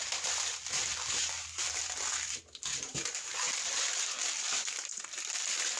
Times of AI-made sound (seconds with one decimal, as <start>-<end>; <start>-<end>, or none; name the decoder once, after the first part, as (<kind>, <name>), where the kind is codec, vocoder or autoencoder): 0.9-1.8 (vocoder, BigVGAN v2); 2.7-4.5